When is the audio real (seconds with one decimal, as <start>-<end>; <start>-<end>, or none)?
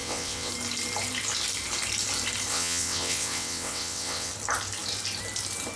0.5-2.5; 4.3-5.8